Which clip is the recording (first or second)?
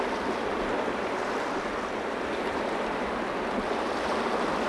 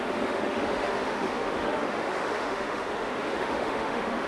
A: first